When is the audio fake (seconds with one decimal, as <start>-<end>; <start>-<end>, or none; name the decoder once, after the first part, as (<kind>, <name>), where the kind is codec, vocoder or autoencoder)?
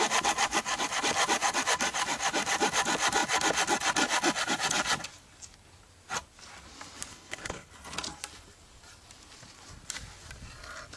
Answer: 7.1-7.7 (codec, HILCodec)